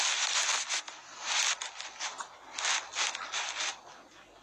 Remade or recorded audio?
recorded